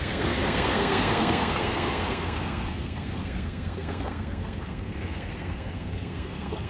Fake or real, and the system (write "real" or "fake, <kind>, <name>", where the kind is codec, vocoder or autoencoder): fake, codec, SNAC